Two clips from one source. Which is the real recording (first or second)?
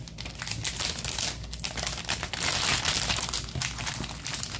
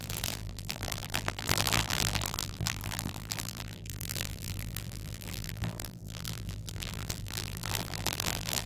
first